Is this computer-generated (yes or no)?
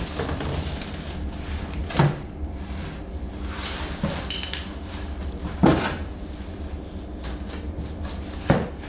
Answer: no